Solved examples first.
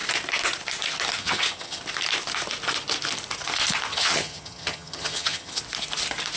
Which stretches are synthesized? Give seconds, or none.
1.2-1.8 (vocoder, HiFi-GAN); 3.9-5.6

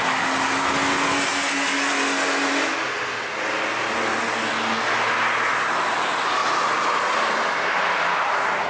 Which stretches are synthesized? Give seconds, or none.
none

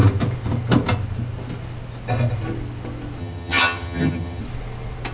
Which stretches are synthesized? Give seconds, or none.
3.2-4.4 (vocoder, HiFi-GAN)

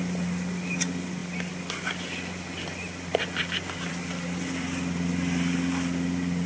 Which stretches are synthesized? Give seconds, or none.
none

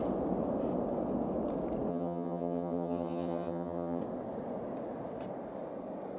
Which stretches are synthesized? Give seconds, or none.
1.9-4.0 (vocoder, HiFi-GAN)